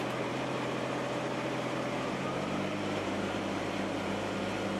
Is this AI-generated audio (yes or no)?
yes